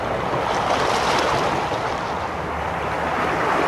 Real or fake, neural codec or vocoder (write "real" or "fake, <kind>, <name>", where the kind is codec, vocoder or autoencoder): real